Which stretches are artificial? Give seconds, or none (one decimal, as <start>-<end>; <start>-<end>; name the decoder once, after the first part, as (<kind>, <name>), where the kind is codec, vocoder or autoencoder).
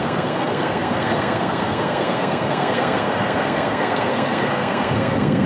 0.0-5.5 (codec, SNAC)